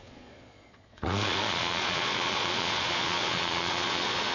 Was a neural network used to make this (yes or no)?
yes